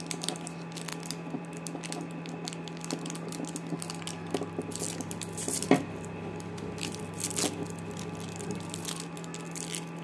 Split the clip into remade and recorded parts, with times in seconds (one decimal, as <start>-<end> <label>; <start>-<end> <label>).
0.0-10.0 recorded